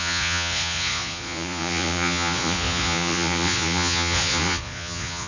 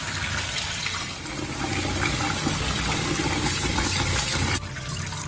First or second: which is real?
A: second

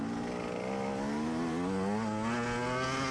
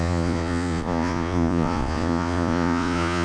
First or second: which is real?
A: first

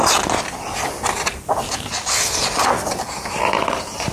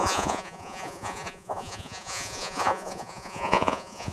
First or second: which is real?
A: first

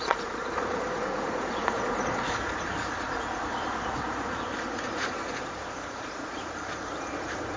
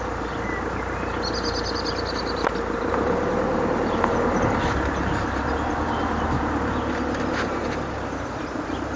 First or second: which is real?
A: second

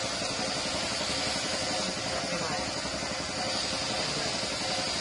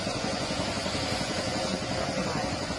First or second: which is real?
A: first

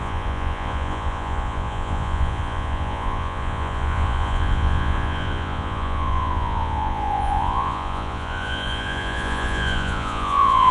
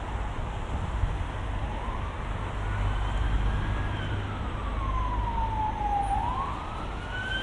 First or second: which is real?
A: second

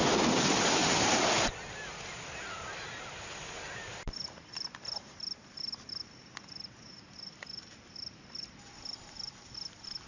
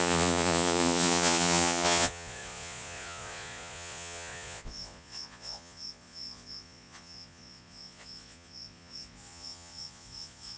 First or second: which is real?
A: first